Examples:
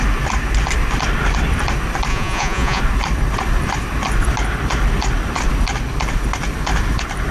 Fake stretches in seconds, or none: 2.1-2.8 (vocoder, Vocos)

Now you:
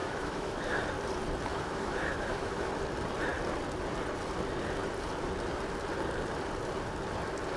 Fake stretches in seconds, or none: 0.0-0.8 (autoencoder, DAC-VAE); 1.5-2.7

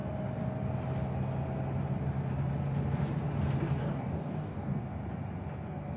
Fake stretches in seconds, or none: 3.8-4.8 (codec, DAC)

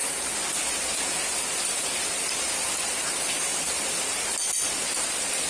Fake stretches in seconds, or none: none

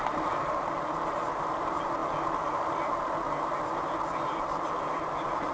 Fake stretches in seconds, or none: none